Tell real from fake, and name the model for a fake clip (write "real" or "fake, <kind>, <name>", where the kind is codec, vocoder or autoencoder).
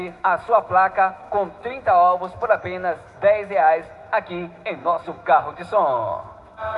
fake, autoencoder, DAC-VAE